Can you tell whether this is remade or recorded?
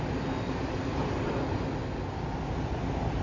recorded